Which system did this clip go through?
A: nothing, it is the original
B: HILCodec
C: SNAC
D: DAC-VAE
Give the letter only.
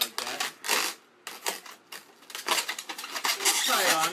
A